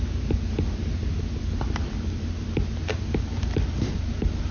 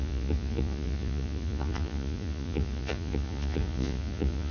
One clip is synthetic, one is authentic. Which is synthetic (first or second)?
second